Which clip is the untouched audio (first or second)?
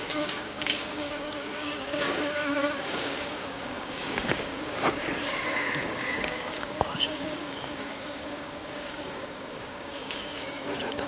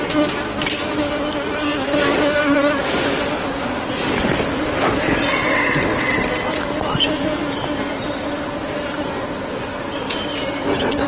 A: second